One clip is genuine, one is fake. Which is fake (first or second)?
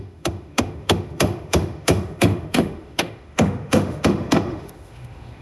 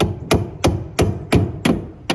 first